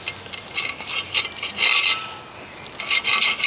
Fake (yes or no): no